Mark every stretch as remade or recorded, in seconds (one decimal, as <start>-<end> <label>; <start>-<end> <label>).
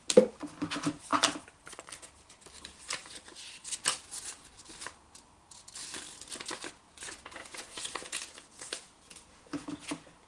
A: 0.0-7.4 recorded; 7.4-10.3 remade